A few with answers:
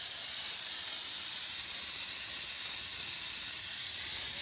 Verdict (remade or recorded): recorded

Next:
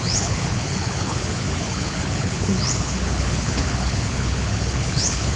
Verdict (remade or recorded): remade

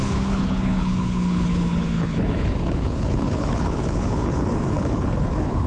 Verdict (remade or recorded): remade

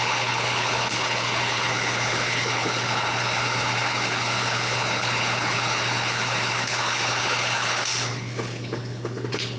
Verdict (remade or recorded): remade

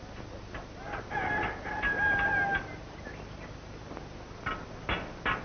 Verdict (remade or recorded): recorded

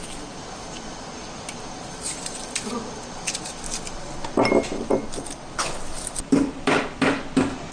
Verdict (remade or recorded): recorded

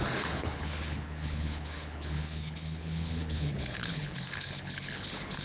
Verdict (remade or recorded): remade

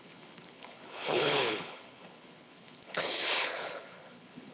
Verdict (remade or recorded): remade